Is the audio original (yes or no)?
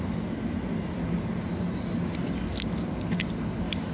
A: yes